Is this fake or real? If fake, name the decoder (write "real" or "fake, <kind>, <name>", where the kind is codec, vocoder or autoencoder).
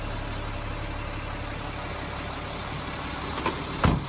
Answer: real